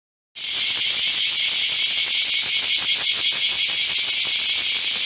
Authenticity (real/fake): real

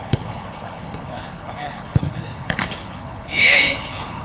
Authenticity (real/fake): fake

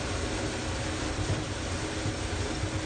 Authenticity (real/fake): real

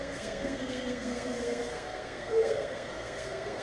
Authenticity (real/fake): fake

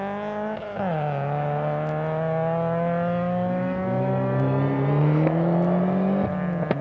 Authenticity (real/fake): real